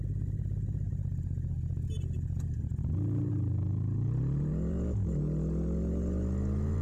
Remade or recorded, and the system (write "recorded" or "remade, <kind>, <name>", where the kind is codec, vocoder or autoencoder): recorded